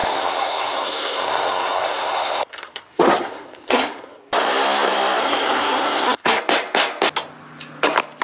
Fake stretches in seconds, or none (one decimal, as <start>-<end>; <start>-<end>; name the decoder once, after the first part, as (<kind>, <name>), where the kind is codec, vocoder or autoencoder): 0.0-4.2 (codec, SNAC); 5.2-6.4